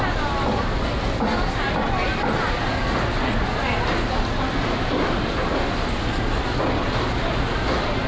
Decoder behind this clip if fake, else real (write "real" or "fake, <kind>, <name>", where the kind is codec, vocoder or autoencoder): real